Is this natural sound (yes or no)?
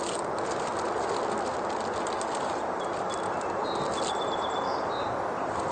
yes